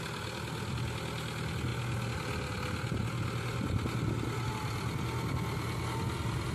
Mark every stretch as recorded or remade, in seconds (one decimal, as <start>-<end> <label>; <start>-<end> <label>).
0.0-6.5 recorded